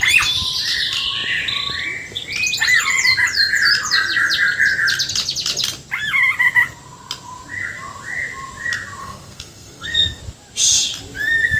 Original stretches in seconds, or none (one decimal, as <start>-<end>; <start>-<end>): 0.0-9.0; 10.2-11.6